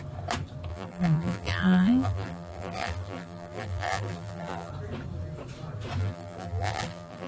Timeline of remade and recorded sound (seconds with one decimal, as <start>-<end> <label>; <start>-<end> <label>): 0.0-0.7 recorded; 0.7-4.7 remade; 4.7-6.0 recorded; 6.0-7.3 remade